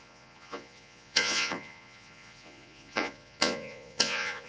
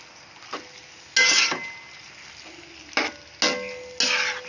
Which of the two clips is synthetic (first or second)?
first